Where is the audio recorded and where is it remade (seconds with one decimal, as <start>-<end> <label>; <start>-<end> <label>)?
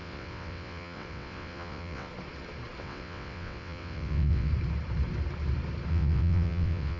0.0-2.1 remade; 2.1-2.8 recorded; 2.8-4.5 remade; 4.5-5.9 recorded; 5.9-7.0 remade